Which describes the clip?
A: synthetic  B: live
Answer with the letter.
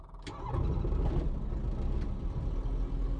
B